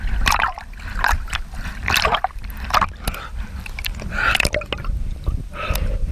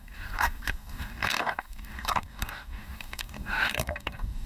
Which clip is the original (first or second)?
first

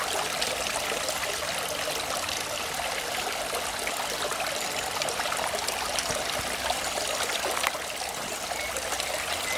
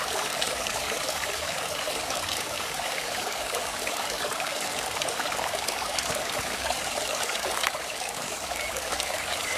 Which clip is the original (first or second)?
first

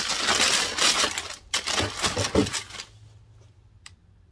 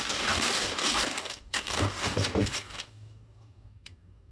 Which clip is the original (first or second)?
first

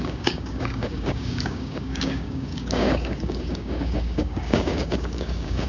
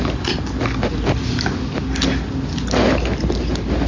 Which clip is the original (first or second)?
second